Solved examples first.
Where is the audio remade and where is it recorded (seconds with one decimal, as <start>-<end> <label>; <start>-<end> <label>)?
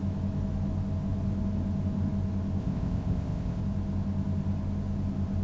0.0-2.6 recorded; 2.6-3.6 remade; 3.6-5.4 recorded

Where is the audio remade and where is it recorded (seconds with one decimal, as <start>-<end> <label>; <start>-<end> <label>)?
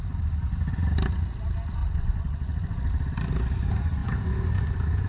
0.0-1.8 recorded; 1.8-2.9 remade; 2.9-4.0 recorded; 4.0-5.1 remade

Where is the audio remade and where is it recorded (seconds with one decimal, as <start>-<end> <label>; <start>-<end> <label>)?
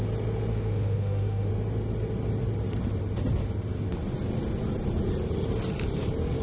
0.0-0.5 recorded; 0.5-1.5 remade; 1.5-6.4 recorded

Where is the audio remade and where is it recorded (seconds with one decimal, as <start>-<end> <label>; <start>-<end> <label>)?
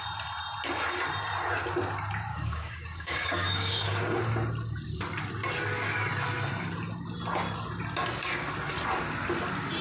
0.0-2.3 recorded; 2.3-4.2 remade; 4.2-9.8 recorded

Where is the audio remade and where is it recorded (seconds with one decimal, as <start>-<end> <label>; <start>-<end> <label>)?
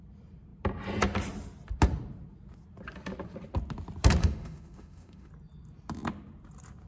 0.0-4.2 recorded; 4.2-5.3 remade; 5.3-6.9 recorded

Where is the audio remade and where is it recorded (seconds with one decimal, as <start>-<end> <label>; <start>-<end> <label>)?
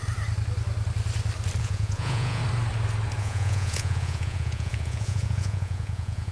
0.0-1.6 recorded; 1.6-2.4 remade; 2.4-3.2 recorded; 3.2-6.3 remade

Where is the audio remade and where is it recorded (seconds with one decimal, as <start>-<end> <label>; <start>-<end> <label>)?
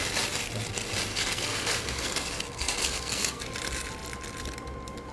0.0-1.1 recorded; 1.1-3.4 remade; 3.4-5.1 recorded